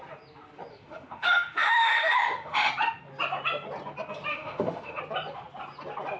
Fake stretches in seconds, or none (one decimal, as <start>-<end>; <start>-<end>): 0.7-2.7; 4.3-5.0